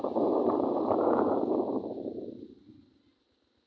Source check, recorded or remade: recorded